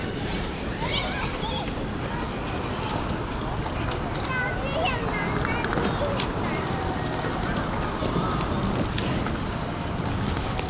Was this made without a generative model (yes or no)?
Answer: no